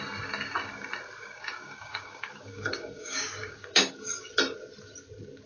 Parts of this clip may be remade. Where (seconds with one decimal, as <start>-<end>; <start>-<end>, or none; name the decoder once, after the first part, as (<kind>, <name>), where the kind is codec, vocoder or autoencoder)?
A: 1.2-4.3 (codec, DAC)